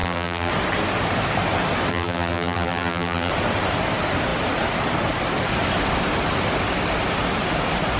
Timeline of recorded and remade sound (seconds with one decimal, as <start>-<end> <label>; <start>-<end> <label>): 0.0-0.5 remade; 0.5-1.9 recorded; 1.9-3.3 remade; 3.3-8.0 recorded